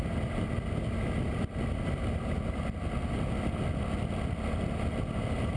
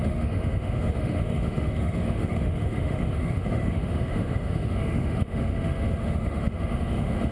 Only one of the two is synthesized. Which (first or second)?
second